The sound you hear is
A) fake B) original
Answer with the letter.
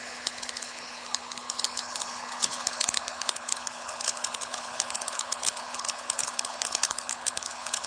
A